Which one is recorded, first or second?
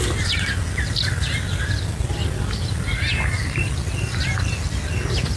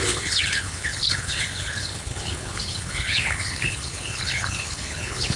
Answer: first